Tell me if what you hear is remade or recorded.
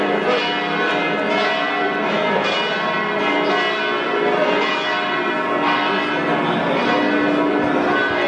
recorded